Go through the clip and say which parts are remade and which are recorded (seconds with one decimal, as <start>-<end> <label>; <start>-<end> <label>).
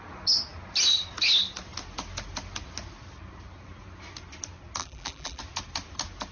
0.0-4.8 recorded; 4.8-5.4 remade; 5.4-6.3 recorded